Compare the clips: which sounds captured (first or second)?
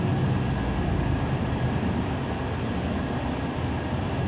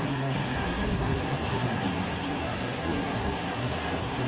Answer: first